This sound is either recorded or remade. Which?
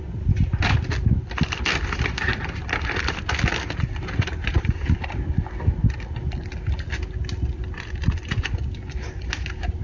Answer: recorded